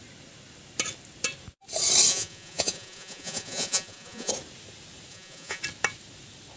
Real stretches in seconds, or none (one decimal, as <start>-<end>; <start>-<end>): 0.0-2.1; 4.3-5.1; 5.6-6.6